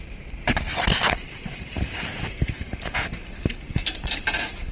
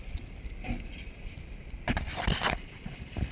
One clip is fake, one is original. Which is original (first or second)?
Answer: first